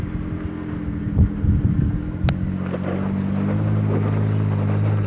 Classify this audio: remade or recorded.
recorded